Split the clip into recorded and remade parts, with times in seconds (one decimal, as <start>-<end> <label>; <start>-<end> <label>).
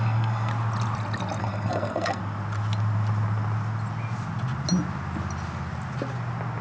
0.0-0.5 remade; 0.5-1.4 recorded; 1.4-2.2 remade; 2.2-6.6 recorded